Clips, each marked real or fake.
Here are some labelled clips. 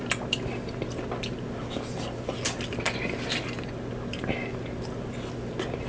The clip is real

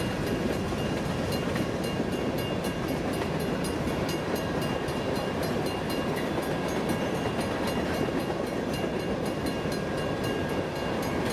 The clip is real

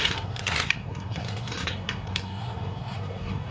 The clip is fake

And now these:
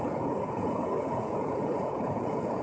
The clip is fake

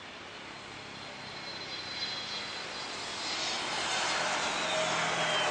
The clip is real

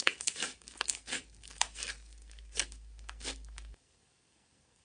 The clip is fake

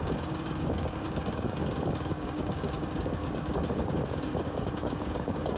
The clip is fake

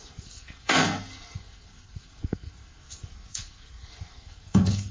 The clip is fake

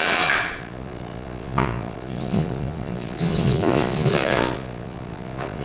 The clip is fake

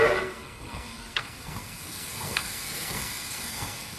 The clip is fake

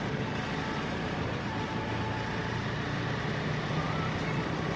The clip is real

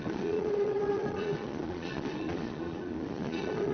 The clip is fake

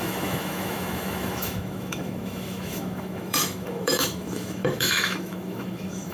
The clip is fake